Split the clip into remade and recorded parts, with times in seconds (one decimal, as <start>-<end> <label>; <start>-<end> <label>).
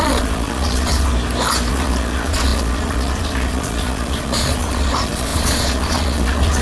0.0-1.1 remade; 1.1-1.7 recorded; 1.7-6.6 remade